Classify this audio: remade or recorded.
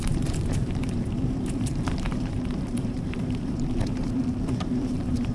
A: remade